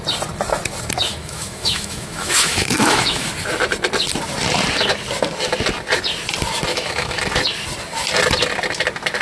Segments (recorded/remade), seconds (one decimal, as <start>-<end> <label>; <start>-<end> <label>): 0.0-1.1 recorded; 1.1-3.3 remade; 3.3-6.7 recorded; 6.7-7.2 remade; 7.2-9.2 recorded